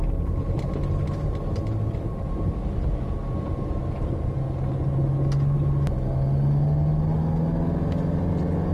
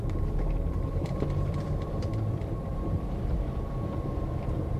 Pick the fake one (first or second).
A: second